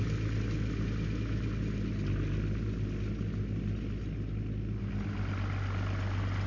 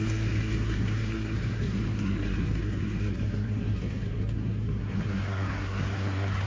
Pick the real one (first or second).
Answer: first